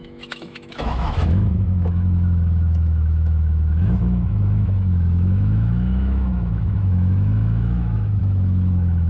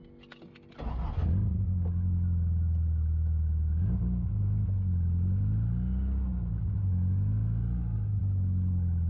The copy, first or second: first